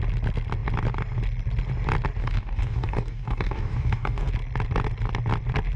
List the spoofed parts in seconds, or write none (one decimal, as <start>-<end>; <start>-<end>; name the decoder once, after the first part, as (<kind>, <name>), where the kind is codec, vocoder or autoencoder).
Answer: 2.2-4.3 (codec, DAC)